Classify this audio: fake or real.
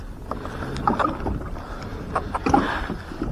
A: real